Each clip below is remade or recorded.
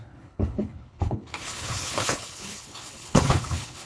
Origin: remade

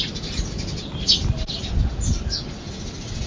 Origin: recorded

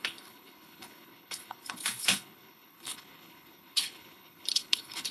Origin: remade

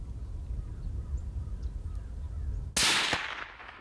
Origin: recorded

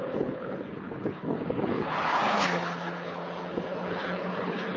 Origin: remade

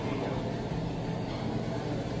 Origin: recorded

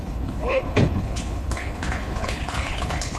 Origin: remade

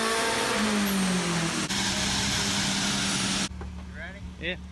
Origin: recorded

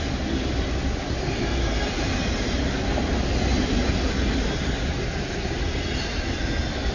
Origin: recorded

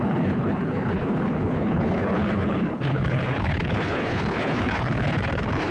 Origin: remade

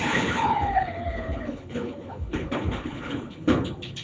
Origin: remade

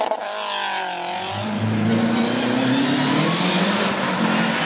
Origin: recorded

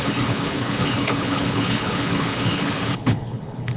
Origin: remade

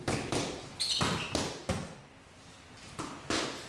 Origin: recorded